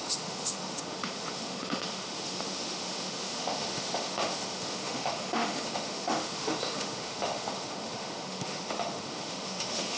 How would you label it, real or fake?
fake